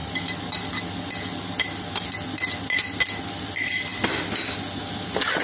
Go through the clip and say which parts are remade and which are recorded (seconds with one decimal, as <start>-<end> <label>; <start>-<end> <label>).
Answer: 0.0-5.4 recorded